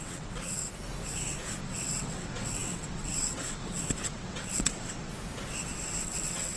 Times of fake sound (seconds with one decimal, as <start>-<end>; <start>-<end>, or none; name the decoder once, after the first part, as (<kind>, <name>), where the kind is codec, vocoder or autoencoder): 0.0-0.6 (vocoder, WaveNeXt); 1.6-5.1; 6.0-6.6